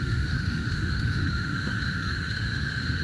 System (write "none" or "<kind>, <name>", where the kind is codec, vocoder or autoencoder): autoencoder, DAC-VAE